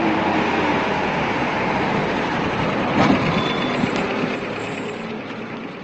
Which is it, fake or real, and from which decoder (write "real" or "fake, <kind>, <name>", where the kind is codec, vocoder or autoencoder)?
fake, vocoder, BigVGAN v2